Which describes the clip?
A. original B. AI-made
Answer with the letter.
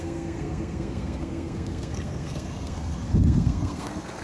B